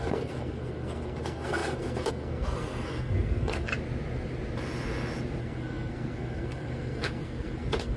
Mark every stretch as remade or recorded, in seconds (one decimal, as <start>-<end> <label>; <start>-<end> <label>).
0.0-3.7 remade; 3.7-5.4 recorded; 5.4-8.0 remade